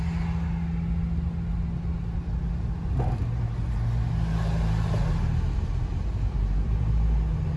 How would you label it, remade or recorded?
recorded